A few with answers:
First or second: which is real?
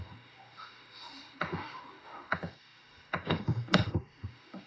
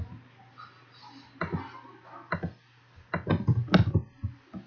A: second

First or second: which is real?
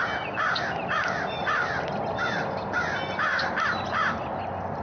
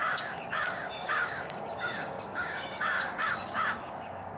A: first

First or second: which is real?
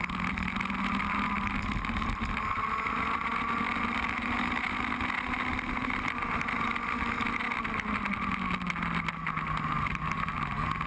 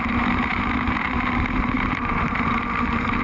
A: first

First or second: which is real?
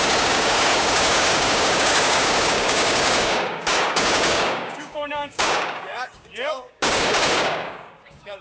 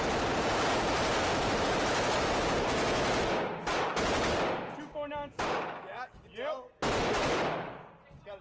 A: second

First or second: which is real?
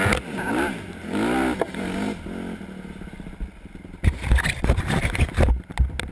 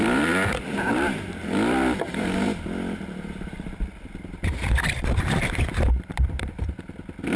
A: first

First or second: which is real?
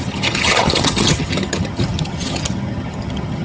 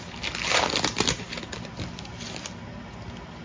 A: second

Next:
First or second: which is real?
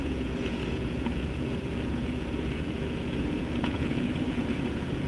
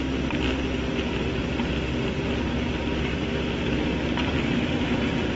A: second